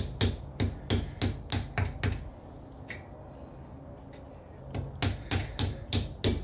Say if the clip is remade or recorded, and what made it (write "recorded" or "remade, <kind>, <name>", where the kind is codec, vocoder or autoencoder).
recorded